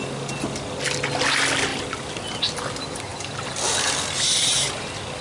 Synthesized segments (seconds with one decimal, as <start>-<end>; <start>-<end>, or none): none